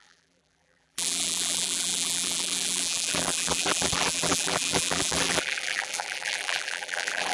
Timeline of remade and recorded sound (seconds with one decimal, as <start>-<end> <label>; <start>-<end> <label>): 0.0-7.3 remade